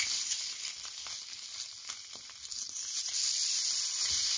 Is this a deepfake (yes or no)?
no